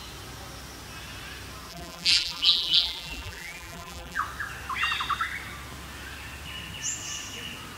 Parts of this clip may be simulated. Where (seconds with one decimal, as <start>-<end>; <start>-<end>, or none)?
1.7-4.2